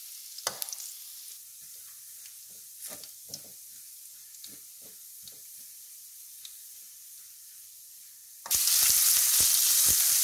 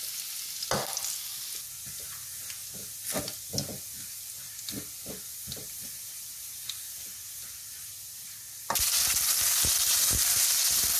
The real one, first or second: second